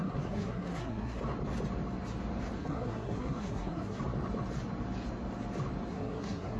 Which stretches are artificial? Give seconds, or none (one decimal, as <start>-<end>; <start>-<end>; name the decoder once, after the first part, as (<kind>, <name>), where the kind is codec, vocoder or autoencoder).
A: 0.0-1.2 (codec, SNAC); 2.6-4.0; 5.9-6.6